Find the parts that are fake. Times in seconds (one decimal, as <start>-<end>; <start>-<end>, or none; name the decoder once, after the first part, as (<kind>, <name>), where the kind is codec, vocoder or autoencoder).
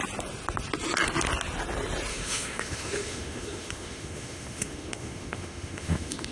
2.1-6.3 (autoencoder, DAC-VAE)